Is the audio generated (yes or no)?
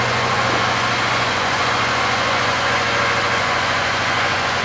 yes